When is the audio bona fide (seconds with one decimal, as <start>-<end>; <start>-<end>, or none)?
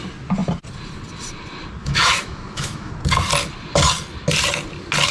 0.0-1.8; 2.9-5.1